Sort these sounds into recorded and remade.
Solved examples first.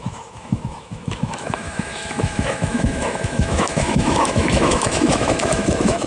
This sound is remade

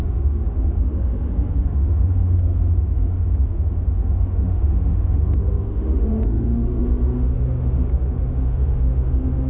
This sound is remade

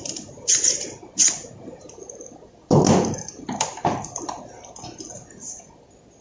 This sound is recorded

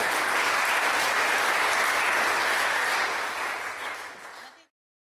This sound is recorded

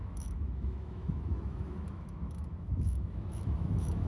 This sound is remade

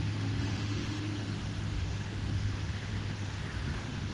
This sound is remade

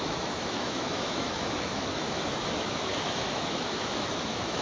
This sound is remade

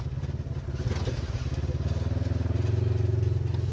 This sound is recorded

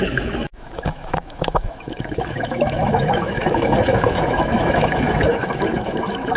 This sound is remade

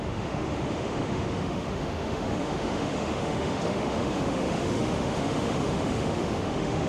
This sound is remade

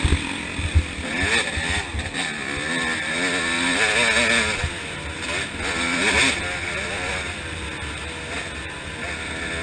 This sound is recorded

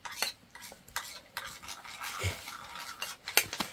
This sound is recorded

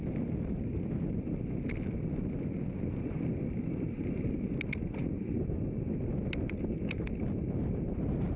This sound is recorded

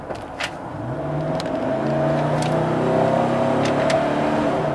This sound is recorded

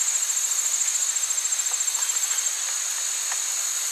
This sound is recorded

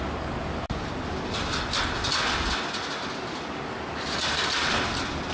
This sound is recorded